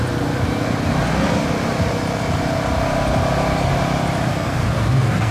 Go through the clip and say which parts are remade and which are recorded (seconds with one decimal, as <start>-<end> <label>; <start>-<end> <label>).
0.0-4.3 recorded; 4.3-5.3 remade